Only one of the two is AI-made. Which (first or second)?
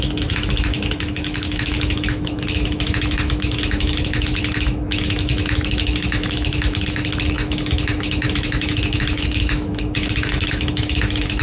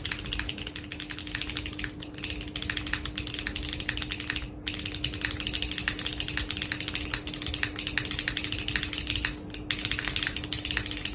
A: first